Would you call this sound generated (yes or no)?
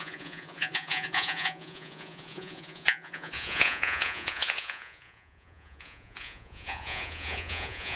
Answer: yes